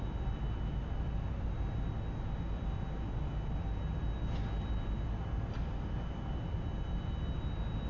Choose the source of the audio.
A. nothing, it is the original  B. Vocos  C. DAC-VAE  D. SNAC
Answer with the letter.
A